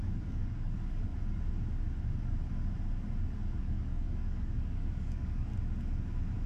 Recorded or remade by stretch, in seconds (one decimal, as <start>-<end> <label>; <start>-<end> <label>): 0.0-1.1 remade; 1.1-3.6 recorded; 3.6-5.5 remade; 5.5-6.5 recorded